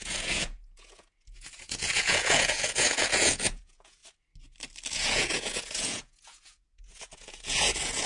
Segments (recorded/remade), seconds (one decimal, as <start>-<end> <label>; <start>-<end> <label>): 0.0-4.0 remade; 4.0-4.9 recorded; 4.9-8.1 remade